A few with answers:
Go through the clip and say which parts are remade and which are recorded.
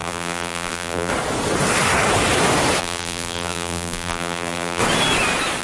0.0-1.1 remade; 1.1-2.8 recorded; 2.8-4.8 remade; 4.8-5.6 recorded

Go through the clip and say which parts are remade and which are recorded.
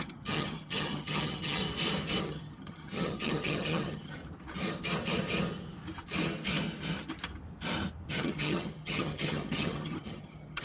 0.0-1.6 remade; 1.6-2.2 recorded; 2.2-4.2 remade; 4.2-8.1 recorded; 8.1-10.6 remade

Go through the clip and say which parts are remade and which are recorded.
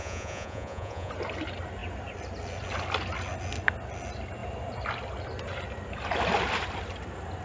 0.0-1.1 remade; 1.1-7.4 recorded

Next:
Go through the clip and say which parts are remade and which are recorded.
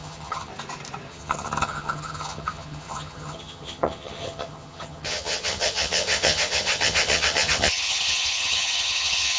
0.0-0.5 remade; 0.5-1.1 recorded; 1.1-9.4 remade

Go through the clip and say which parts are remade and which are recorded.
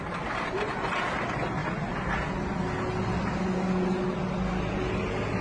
0.0-5.4 recorded